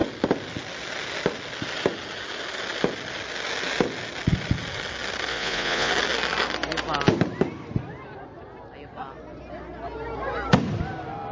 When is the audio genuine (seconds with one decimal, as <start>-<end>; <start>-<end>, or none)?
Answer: 0.0-5.3; 5.9-11.3